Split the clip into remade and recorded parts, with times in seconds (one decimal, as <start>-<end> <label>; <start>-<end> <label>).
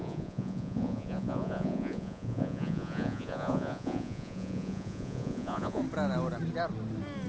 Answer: 0.0-5.8 remade; 5.8-7.3 recorded